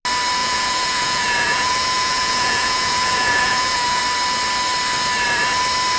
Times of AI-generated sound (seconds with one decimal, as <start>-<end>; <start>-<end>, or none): 0.4-4.0